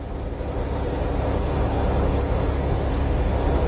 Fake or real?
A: real